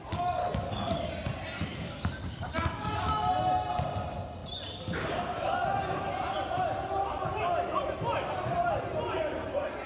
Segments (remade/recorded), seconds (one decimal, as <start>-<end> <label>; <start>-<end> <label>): 0.0-0.4 recorded; 0.4-1.1 remade; 1.1-1.7 recorded; 1.7-3.3 remade; 3.3-9.9 recorded